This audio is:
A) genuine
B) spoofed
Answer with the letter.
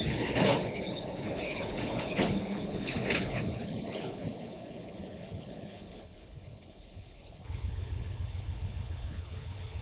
B